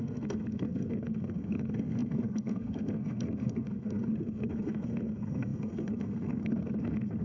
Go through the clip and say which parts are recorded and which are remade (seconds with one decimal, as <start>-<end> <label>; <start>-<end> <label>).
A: 0.0-7.2 remade